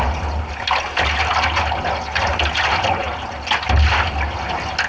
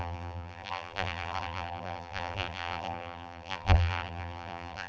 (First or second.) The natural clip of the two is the first